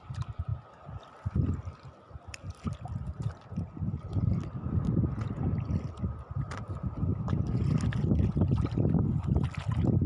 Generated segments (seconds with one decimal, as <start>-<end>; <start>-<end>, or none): 0.5-5.4